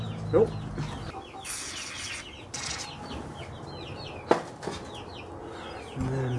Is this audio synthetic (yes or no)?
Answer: no